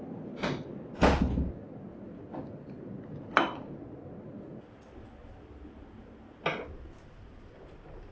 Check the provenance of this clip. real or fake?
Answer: real